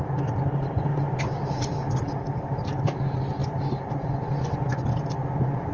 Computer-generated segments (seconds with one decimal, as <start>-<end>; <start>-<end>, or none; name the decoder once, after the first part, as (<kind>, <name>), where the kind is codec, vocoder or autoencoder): none